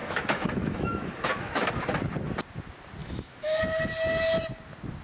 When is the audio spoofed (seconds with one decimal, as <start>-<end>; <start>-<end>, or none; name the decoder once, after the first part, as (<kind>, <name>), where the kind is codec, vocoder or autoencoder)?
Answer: 0.0-1.7 (autoencoder, DAC-VAE); 3.0-3.6